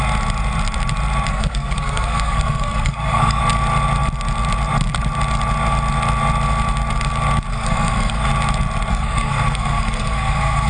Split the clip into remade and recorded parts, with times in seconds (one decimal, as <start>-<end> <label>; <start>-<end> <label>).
0.0-1.3 recorded; 1.3-3.4 remade; 3.4-7.5 recorded; 7.5-8.3 remade; 8.3-8.9 recorded; 8.9-10.7 remade